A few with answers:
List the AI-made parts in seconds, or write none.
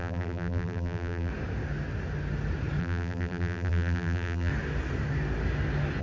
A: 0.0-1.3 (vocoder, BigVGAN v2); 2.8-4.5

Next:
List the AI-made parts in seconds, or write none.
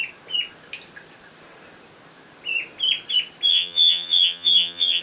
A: 3.5-5.0 (vocoder, HiFi-GAN)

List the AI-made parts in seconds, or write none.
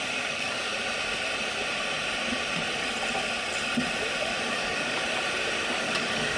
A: 0.0-0.7 (codec, DAC); 4.5-5.0; 5.8-6.4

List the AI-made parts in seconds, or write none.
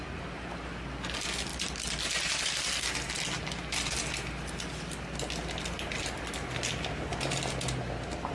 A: none